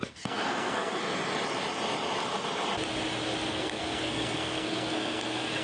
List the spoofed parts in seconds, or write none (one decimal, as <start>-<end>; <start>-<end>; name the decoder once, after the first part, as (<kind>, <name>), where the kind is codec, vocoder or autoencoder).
0.0-1.0 (codec, SNAC); 3.5-5.6